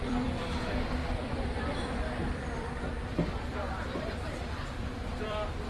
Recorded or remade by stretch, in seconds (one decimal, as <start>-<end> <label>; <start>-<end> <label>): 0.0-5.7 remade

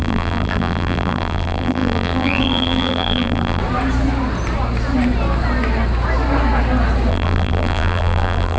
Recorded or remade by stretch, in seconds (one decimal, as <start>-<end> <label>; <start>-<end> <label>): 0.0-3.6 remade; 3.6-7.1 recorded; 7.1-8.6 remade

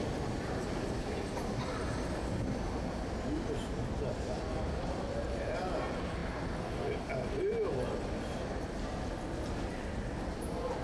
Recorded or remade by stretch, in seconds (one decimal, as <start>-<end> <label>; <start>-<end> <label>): 0.0-10.8 recorded

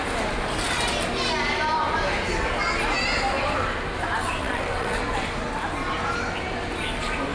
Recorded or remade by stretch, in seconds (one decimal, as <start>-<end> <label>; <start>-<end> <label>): 0.0-4.4 recorded; 4.4-5.0 remade; 5.0-7.3 recorded

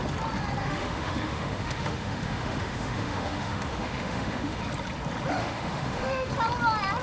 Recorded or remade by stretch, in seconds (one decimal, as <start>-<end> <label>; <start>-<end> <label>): 0.0-0.6 recorded; 0.6-4.6 remade; 4.6-5.4 recorded; 5.4-6.3 remade; 6.3-7.0 recorded

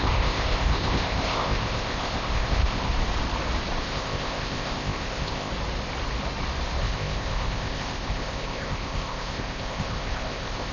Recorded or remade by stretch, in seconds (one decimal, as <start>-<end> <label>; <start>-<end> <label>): 0.0-2.9 remade; 2.9-3.8 recorded; 3.8-5.5 remade; 5.5-6.8 recorded; 6.8-10.7 remade